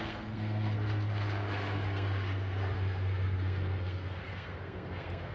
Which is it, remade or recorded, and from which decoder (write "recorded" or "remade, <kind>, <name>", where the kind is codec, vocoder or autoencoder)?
remade, codec, SNAC